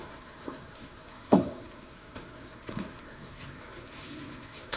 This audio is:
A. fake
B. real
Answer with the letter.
A